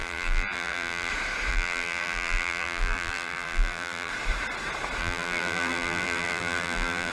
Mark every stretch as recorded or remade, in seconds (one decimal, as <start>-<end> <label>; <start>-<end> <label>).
0.0-1.1 remade; 1.1-1.5 recorded; 1.5-4.1 remade; 4.1-5.0 recorded; 5.0-7.1 remade